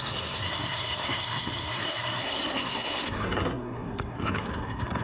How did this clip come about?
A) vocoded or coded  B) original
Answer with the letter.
A